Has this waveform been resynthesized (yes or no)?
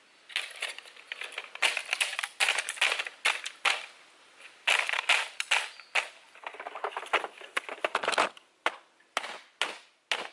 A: no